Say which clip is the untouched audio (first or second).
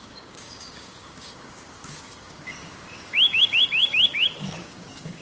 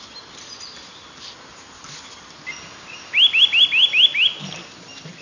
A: second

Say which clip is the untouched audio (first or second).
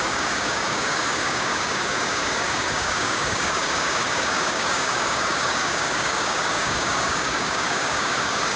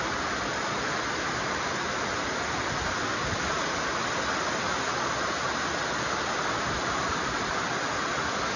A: second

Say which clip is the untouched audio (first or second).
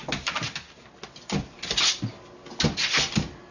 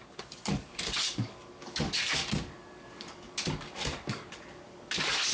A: first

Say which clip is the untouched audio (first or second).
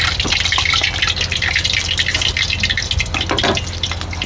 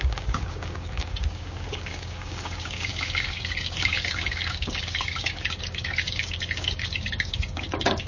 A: first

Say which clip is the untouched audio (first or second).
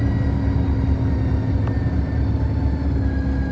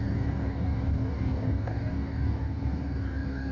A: first